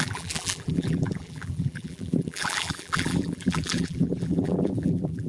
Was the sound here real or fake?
fake